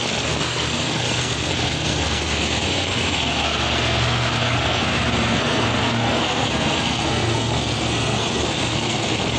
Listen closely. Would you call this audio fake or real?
fake